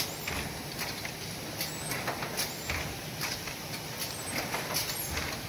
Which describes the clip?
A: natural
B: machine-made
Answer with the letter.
A